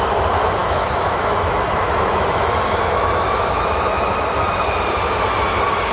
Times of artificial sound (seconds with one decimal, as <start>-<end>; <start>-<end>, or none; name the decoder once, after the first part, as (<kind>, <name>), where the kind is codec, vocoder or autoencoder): 0.6-4.1 (autoencoder, DAC-VAE)